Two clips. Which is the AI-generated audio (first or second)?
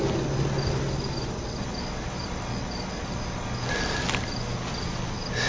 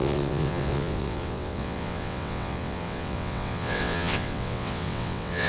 second